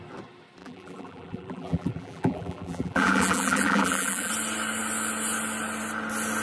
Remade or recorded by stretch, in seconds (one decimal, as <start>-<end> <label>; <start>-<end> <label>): 0.0-0.6 recorded; 0.6-4.3 remade; 4.3-6.4 recorded